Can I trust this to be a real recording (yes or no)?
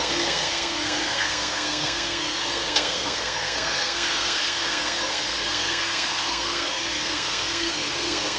no